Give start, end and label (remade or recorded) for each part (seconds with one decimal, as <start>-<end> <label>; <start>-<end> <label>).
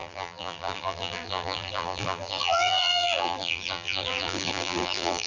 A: 0.0-5.3 remade